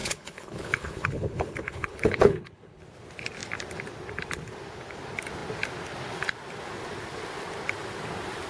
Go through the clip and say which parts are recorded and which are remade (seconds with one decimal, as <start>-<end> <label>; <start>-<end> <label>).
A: 0.0-2.8 remade; 2.8-8.5 recorded